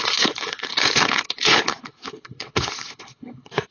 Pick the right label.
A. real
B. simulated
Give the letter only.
B